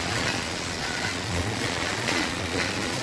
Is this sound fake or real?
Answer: fake